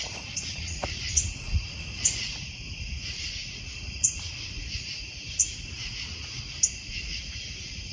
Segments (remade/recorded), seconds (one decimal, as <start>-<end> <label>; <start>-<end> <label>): 0.0-6.4 remade; 6.4-6.9 recorded; 6.9-7.9 remade